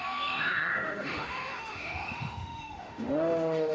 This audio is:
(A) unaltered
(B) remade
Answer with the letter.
B